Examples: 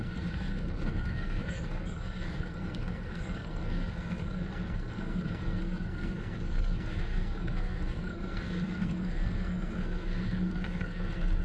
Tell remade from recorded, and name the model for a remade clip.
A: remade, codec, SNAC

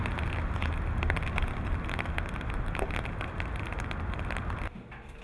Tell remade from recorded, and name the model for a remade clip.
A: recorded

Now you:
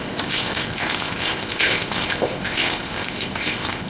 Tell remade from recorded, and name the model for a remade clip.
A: remade, codec, ZipCodec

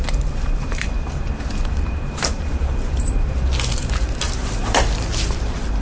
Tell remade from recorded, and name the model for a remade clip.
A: remade, vocoder, BigVGAN v2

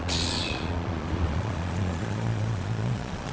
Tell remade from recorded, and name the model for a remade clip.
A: remade, vocoder, Vocos